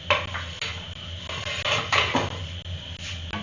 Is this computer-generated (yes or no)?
no